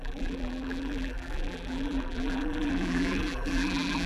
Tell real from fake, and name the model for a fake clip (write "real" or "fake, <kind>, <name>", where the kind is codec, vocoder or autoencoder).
fake, vocoder, BigVGAN v2